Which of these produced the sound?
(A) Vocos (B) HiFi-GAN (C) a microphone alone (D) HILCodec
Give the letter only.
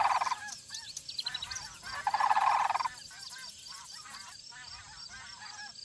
C